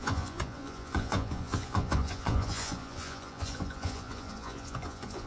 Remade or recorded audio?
remade